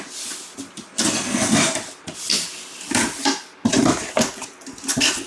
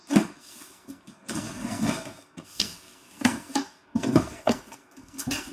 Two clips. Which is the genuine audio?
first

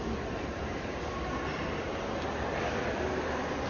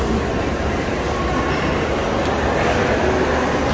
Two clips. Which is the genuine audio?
second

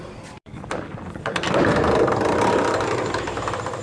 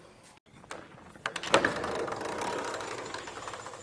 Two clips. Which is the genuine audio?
second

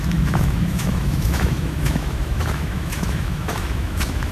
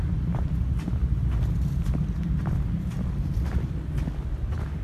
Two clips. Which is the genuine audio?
second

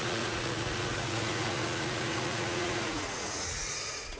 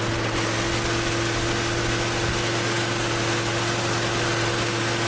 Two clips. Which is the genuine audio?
second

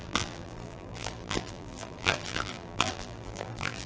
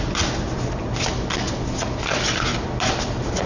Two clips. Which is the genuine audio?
second